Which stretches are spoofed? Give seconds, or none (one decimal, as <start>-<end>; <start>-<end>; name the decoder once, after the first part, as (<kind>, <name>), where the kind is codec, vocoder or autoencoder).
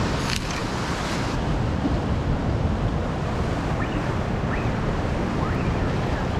none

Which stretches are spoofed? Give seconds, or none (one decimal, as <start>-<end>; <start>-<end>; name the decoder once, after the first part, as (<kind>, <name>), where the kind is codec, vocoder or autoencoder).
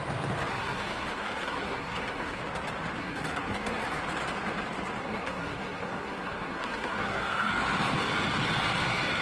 0.5-2.4 (codec, SNAC); 3.0-4.0; 5.0-7.5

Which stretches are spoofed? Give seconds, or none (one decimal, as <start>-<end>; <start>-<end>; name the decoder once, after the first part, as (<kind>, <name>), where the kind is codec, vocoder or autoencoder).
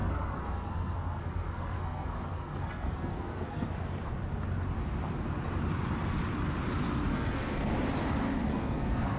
0.0-3.7 (codec, SNAC); 7.1-7.7; 8.5-9.2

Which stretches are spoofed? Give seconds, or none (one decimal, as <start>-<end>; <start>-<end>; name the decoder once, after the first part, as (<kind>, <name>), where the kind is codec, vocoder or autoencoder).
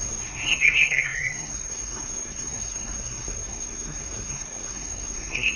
0.0-5.6 (codec, SNAC)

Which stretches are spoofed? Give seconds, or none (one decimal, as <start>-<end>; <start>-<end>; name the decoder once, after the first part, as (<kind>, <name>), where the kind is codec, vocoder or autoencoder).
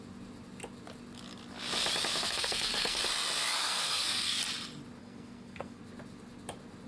2.1-3.0 (codec, SNAC); 3.6-4.4; 5.0-5.8